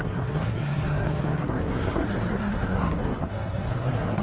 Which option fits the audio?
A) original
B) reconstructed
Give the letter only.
B